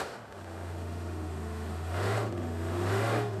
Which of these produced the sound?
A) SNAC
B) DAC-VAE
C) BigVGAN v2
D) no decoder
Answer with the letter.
B